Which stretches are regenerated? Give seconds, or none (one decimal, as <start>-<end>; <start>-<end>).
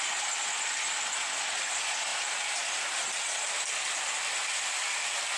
none